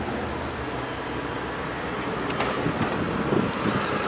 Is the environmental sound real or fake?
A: real